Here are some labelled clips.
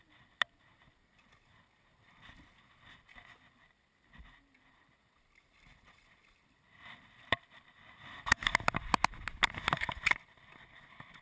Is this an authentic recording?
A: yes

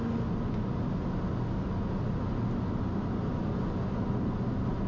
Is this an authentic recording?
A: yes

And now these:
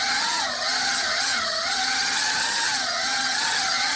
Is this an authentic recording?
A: no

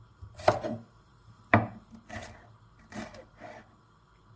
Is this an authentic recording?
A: yes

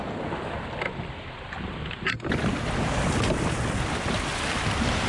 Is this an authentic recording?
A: yes